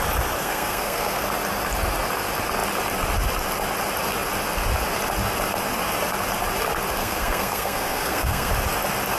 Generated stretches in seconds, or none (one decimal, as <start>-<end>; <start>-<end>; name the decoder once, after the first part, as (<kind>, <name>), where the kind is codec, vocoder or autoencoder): 0.4-1.2 (codec, SNAC); 7.0-8.5